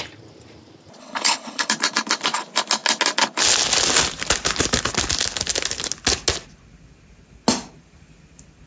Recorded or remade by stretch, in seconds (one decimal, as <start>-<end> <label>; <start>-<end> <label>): 0.0-1.0 recorded; 1.0-1.7 remade; 1.7-8.7 recorded